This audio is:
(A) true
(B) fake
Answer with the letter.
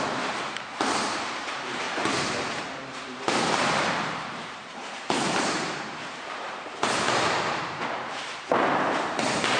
B